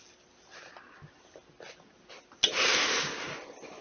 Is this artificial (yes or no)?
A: no